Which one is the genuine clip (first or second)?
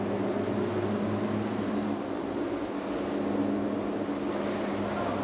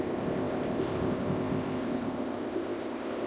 first